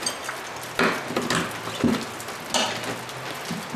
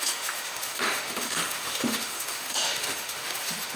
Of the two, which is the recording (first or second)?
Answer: first